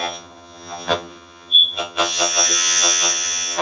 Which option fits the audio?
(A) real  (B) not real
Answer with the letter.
B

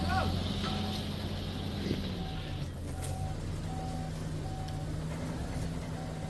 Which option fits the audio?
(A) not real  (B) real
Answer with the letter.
B